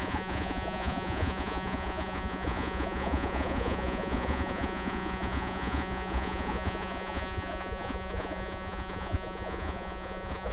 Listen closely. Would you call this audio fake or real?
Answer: fake